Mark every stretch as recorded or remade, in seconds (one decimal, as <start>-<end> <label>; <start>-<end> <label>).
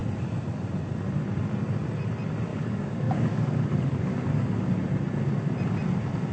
0.0-2.5 recorded; 2.5-4.7 remade; 4.7-6.3 recorded